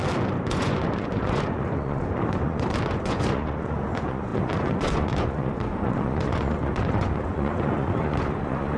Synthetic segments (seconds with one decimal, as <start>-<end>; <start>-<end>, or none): 0.5-8.8